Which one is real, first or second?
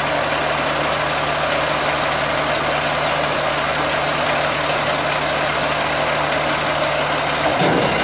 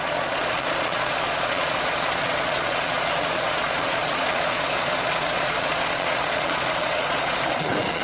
first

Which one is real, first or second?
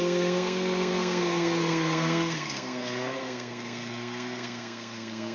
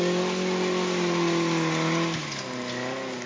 second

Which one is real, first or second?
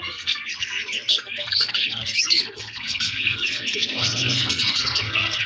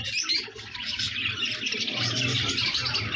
second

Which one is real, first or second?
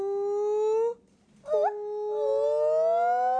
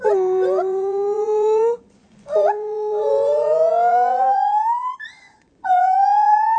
first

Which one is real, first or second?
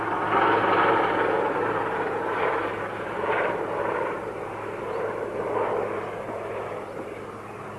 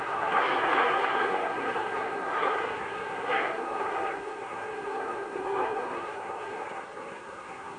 first